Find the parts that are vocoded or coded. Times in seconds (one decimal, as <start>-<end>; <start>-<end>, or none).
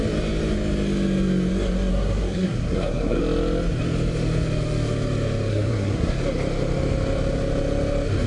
1.9-3.2; 5.5-6.2